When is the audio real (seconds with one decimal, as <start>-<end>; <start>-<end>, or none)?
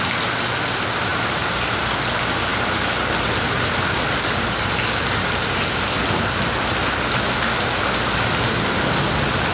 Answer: 0.0-9.5